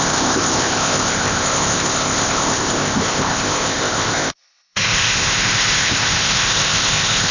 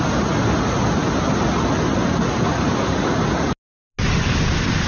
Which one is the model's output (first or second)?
first